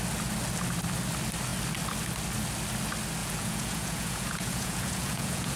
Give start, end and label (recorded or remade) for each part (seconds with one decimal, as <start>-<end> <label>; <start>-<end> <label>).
0.0-3.2 recorded; 3.2-5.6 remade